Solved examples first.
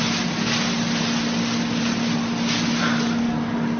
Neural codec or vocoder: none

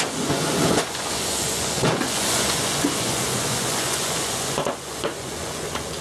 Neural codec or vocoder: vocoder, Vocos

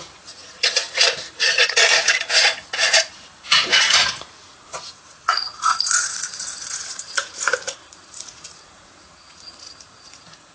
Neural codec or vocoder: vocoder, Vocos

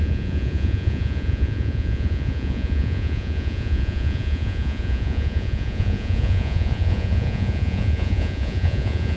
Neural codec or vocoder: vocoder, Vocos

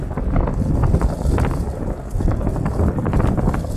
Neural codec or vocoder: none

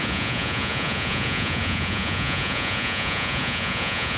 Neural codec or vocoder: vocoder, Vocos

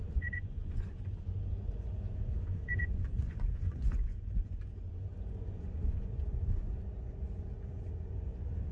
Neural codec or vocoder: vocoder, Vocos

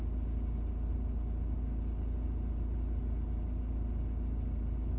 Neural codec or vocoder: none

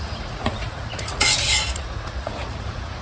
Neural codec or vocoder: vocoder, Vocos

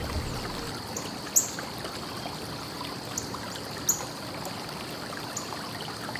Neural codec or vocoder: none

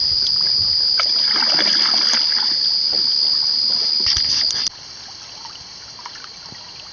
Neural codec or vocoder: none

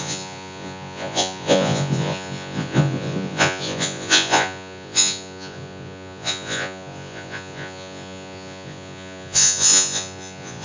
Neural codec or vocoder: vocoder, Vocos